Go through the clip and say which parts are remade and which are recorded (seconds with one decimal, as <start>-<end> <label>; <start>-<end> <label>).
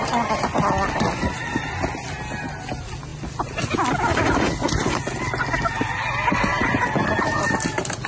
0.0-8.1 recorded